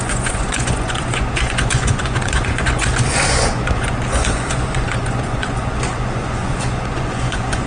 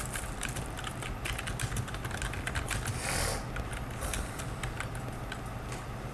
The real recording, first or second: second